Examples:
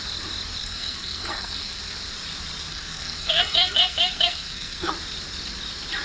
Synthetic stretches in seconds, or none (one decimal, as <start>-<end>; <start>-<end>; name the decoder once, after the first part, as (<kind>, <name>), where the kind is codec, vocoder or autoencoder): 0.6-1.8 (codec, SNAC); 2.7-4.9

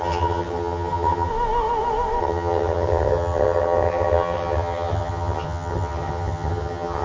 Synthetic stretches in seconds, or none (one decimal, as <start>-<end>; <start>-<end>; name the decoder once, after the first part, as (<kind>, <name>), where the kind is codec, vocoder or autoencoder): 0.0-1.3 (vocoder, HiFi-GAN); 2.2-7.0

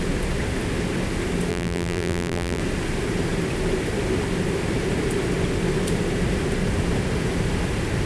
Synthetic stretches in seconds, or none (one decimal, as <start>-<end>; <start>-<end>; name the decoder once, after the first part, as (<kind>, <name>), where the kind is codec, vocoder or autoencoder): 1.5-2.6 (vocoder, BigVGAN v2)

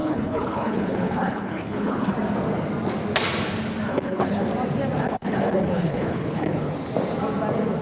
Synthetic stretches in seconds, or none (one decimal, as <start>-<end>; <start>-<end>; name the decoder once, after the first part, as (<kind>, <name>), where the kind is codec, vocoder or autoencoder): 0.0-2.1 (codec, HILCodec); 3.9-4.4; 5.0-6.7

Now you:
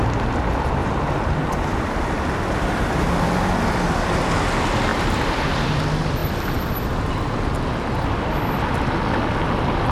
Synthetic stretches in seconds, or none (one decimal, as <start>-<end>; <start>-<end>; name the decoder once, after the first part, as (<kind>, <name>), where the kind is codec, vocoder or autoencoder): 0.8-3.4 (vocoder, BigVGAN v2); 4.9-5.8

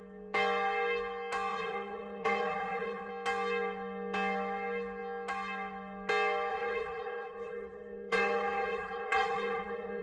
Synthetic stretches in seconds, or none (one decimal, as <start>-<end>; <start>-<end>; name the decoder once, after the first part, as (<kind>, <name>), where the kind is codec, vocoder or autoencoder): 1.5-3.1 (vocoder, Vocos); 6.5-10.0